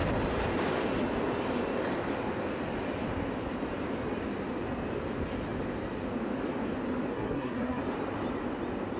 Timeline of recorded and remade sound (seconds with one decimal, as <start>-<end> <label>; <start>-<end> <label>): 0.0-7.1 recorded; 7.1-7.8 remade; 7.8-9.0 recorded